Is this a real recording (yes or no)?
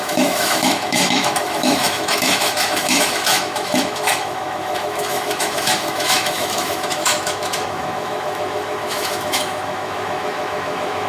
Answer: no